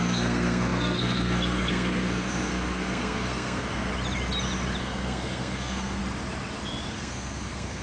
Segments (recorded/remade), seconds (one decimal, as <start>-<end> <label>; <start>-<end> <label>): 0.0-3.9 remade; 3.9-4.8 recorded; 4.8-6.0 remade; 6.0-6.9 recorded; 6.9-7.8 remade